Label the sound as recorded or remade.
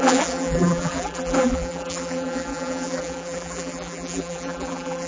remade